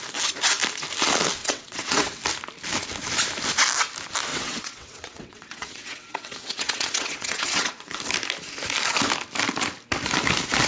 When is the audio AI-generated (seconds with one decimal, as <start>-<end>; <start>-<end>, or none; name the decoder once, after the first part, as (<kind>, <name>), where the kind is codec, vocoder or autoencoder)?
1.4-2.2 (vocoder, WaveNeXt); 4.3-8.0